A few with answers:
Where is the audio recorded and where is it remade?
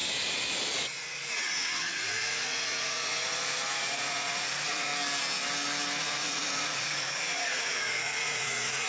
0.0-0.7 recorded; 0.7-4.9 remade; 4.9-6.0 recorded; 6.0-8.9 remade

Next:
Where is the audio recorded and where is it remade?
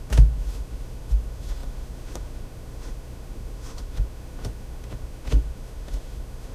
0.0-6.5 remade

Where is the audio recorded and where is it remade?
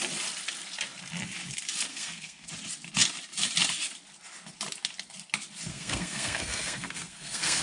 0.0-1.9 recorded; 1.9-2.5 remade; 2.5-5.7 recorded; 5.7-7.6 remade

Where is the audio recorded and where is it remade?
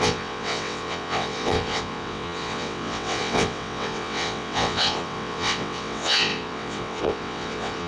0.0-7.9 remade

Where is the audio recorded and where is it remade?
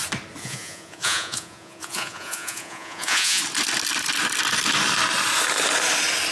0.0-0.4 recorded; 0.4-3.4 remade; 3.4-6.3 recorded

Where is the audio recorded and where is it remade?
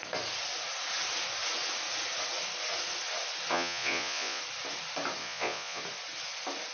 0.0-3.5 recorded; 3.5-4.4 remade; 4.4-5.2 recorded; 5.2-5.8 remade; 5.8-6.7 recorded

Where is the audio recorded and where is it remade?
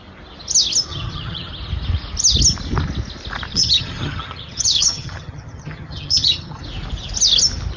0.0-0.9 recorded; 0.9-1.5 remade; 1.5-3.5 recorded; 3.5-6.6 remade; 6.6-7.8 recorded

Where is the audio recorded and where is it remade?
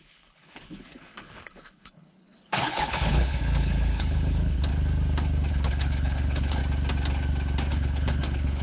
0.0-4.7 remade; 4.7-5.5 recorded; 5.5-6.6 remade; 6.6-7.7 recorded; 7.7-8.6 remade